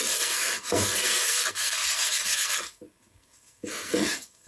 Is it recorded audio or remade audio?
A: remade